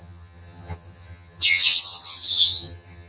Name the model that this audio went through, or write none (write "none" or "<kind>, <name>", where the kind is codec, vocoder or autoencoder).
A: vocoder, HiFi-GAN